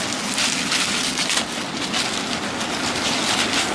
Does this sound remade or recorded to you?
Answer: recorded